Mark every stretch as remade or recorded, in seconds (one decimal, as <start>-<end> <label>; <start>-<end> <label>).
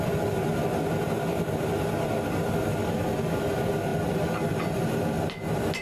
0.0-5.8 recorded